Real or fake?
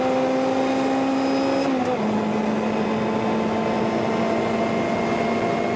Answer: real